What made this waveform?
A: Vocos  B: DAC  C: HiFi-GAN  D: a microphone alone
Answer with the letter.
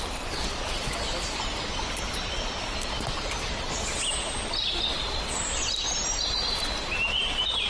D